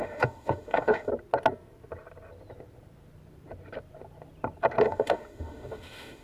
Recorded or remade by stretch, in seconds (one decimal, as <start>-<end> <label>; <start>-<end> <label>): 0.0-1.1 remade; 1.1-4.8 recorded; 4.8-6.2 remade